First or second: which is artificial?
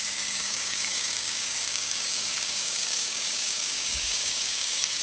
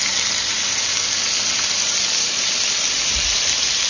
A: first